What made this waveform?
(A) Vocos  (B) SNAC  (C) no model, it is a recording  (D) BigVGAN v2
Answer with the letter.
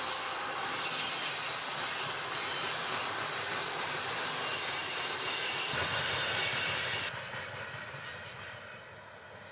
C